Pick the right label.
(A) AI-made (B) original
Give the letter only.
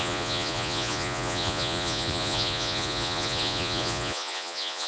A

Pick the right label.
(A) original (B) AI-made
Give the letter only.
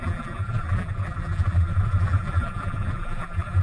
B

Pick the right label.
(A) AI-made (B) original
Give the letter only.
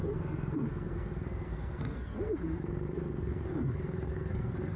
A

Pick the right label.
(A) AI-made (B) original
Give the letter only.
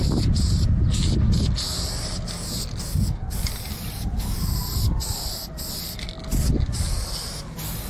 B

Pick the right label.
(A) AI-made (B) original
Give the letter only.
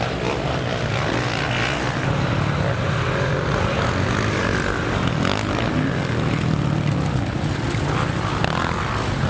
B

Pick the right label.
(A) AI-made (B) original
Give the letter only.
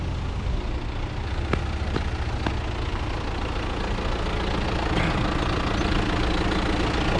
B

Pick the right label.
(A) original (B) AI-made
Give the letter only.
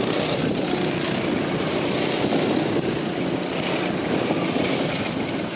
A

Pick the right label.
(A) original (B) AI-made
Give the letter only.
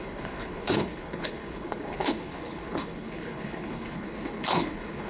B